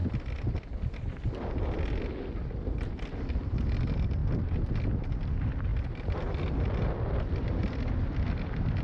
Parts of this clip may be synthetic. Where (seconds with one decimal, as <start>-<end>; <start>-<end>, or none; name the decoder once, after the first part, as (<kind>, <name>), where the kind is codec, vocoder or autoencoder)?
0.0-1.1 (vocoder, BigVGAN v2); 5.7-7.9